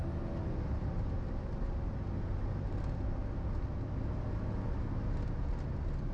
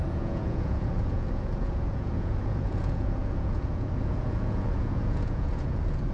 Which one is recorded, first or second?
first